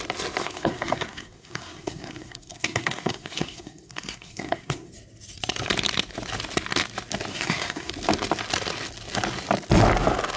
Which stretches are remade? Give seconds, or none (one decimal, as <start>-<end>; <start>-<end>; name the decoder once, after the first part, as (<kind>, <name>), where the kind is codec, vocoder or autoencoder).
0.4-4.9 (codec, SNAC); 7.3-7.9